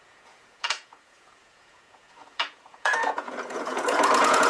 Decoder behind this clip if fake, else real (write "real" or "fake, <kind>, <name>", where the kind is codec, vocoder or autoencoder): fake, vocoder, Vocos